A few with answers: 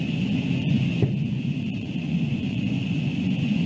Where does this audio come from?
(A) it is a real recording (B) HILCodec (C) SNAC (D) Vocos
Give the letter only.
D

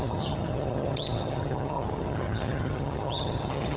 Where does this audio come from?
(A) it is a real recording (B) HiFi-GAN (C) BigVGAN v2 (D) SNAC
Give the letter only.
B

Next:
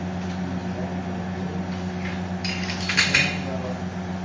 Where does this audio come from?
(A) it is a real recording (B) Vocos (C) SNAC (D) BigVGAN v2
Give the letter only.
A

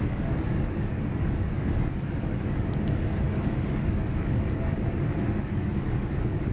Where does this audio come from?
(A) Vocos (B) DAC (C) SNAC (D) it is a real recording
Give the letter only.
B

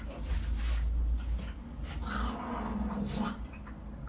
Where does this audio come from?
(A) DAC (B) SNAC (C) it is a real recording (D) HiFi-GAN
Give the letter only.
C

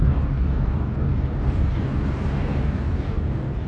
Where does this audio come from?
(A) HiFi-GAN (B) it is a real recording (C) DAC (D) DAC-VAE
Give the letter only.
C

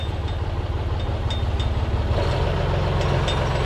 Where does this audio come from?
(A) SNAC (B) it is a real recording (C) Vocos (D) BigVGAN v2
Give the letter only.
B